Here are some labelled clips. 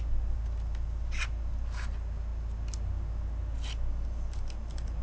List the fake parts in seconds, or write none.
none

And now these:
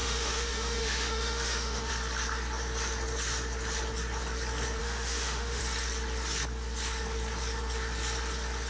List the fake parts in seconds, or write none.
0.0-1.9 (autoencoder, DAC-VAE); 4.8-5.6

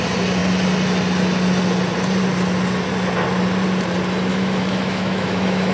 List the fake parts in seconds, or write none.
4.3-5.7 (autoencoder, DAC-VAE)